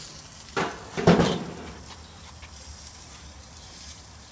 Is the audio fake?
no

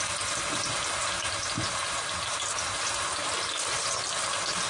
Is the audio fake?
no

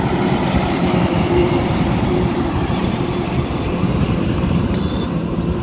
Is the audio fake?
yes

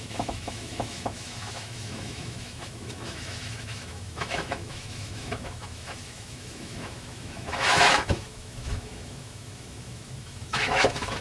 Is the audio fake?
yes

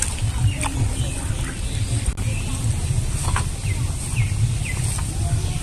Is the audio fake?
no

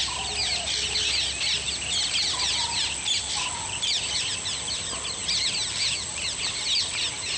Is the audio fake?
no